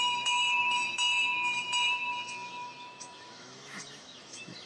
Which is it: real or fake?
fake